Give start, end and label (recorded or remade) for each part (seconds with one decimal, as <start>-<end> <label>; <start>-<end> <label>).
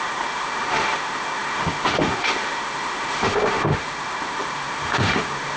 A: 0.0-5.6 remade